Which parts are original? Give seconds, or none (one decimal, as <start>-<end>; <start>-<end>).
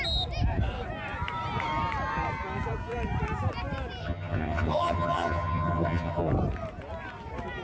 0.0-4.0; 6.3-7.6